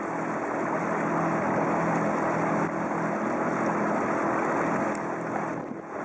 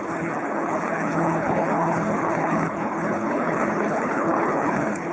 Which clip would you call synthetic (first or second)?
second